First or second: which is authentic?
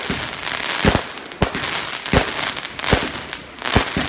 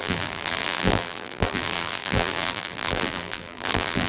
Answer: first